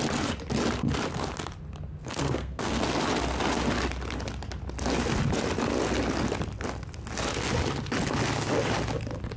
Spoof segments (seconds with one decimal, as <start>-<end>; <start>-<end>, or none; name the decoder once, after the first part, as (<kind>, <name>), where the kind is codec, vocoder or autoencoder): 2.0-2.8 (codec, SNAC)